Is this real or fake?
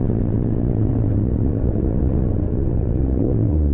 fake